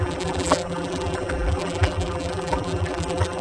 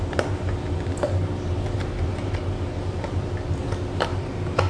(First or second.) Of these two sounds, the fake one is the first